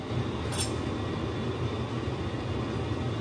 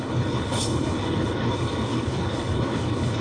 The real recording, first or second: first